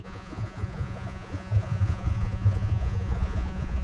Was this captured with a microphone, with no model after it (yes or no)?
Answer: no